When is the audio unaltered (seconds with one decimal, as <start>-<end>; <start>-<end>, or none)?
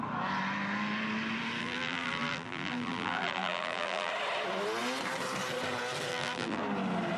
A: 0.0-1.6; 4.1-6.1; 6.6-7.2